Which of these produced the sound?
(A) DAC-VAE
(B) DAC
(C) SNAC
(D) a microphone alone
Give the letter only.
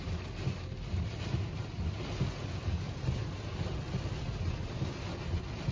D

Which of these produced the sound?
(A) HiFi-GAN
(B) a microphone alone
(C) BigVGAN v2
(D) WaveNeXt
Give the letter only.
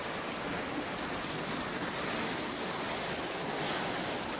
B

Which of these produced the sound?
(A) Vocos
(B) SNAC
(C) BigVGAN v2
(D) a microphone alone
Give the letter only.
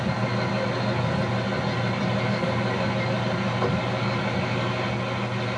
D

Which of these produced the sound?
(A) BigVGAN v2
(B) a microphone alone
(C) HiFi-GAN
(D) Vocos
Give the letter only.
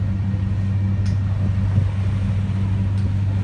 B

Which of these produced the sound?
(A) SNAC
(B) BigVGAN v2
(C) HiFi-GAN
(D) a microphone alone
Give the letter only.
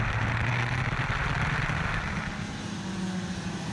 D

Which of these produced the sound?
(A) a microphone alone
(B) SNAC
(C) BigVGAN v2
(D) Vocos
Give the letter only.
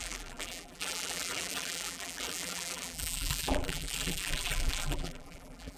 C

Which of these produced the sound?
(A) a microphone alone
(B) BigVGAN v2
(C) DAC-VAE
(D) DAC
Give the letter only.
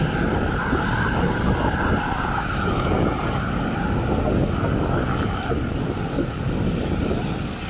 A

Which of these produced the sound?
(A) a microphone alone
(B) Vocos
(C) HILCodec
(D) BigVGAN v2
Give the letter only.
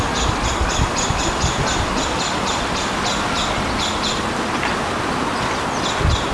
A